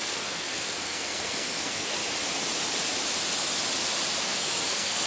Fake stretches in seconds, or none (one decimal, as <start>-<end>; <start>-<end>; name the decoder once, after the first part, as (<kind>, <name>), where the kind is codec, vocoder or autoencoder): 0.0-2.0 (codec, SNAC); 4.2-5.1